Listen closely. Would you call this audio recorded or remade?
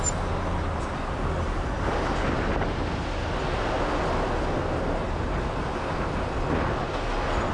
recorded